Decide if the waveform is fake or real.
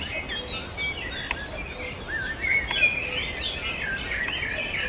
real